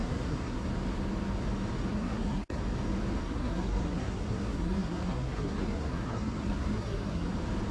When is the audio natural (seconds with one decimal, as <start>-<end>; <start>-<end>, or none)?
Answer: 0.7-1.9; 2.6-3.2; 7.3-7.7